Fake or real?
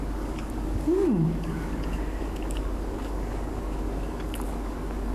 fake